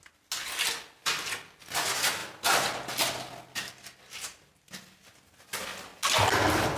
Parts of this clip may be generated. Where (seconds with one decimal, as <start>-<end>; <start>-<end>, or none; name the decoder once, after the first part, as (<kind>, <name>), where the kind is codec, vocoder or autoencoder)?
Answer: none